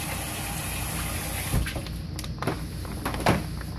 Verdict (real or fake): real